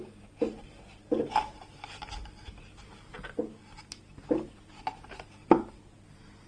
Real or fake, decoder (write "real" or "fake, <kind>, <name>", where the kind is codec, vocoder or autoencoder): real